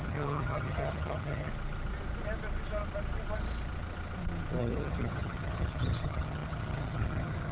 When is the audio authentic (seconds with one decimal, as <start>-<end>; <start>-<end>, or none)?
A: 1.5-4.6